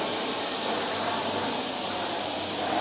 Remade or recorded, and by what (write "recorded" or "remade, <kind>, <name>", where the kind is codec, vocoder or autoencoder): remade, vocoder, BigVGAN v2